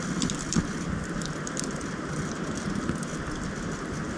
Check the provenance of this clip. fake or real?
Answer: real